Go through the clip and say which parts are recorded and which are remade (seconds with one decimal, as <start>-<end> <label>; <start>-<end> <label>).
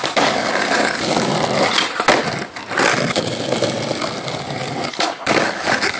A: 0.0-1.3 remade; 1.3-4.9 recorded; 4.9-6.0 remade